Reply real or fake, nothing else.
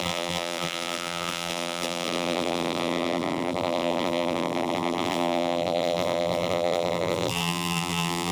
fake